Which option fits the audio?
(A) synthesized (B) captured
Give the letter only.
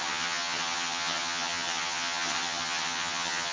A